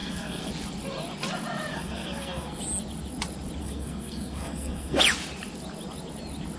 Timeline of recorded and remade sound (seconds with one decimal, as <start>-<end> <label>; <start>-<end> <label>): 0.0-0.5 remade; 0.5-1.7 recorded; 1.7-2.6 remade; 2.6-3.6 recorded; 3.6-5.0 remade; 5.0-6.6 recorded

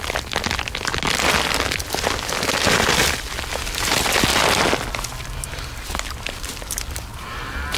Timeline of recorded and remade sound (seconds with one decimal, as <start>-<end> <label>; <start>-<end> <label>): 0.0-7.8 recorded

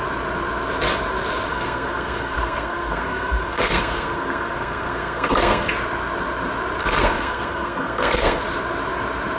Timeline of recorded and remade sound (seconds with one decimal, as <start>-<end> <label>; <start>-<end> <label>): 0.0-1.5 recorded; 1.5-5.7 remade; 5.7-6.8 recorded; 6.8-8.4 remade; 8.4-9.4 recorded

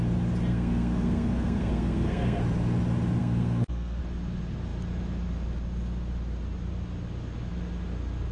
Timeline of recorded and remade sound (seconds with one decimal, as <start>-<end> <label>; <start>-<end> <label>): 0.0-0.5 recorded; 0.5-2.4 remade; 2.4-3.2 recorded; 3.2-4.0 remade; 4.0-8.3 recorded

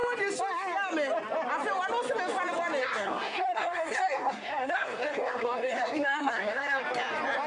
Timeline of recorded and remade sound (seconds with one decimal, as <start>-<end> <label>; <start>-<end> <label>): 0.0-2.8 recorded; 2.8-6.8 remade; 6.8-7.5 recorded

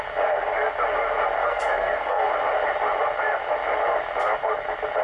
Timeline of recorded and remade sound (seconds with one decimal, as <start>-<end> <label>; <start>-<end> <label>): 0.0-1.4 recorded; 1.4-2.3 remade; 2.3-5.0 recorded